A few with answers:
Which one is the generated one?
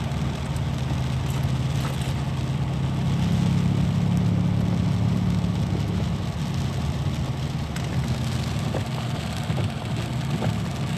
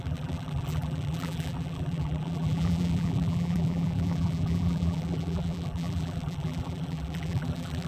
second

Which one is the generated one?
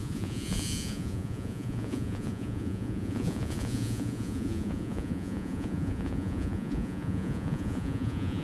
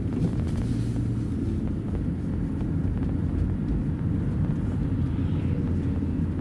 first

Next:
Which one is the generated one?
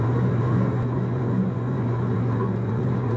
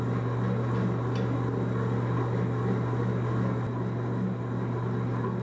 first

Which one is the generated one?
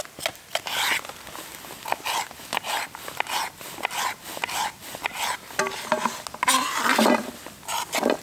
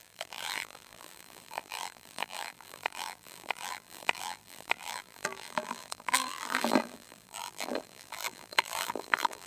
second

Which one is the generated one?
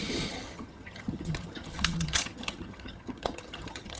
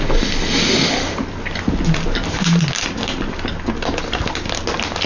first